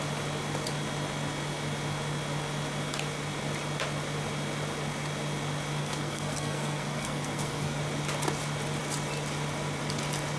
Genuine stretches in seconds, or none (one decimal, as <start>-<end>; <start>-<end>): 0.0-5.8; 7.8-10.4